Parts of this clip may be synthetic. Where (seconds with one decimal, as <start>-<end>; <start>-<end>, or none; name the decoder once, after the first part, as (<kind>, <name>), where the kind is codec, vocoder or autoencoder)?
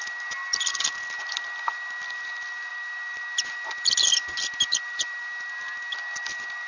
none